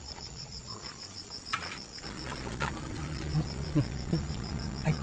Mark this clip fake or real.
fake